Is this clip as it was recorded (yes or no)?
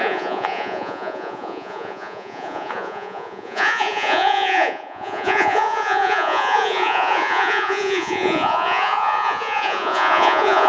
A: no